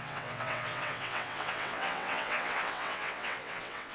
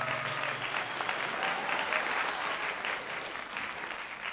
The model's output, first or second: first